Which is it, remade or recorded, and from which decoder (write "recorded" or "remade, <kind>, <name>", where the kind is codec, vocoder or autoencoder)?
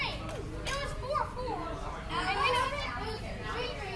recorded